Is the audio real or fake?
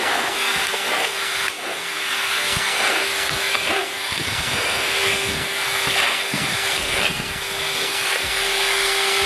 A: fake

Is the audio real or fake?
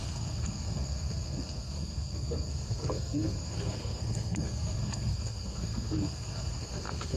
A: fake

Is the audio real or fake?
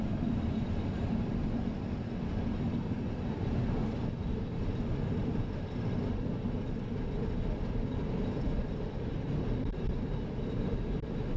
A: real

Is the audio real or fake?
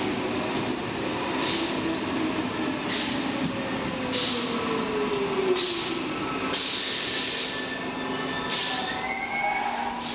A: real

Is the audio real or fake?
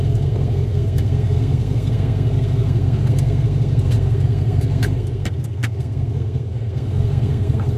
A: fake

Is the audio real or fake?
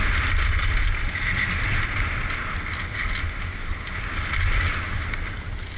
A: real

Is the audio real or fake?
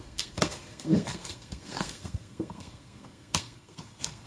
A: fake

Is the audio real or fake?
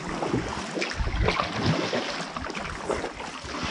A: real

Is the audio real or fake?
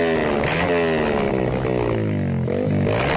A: real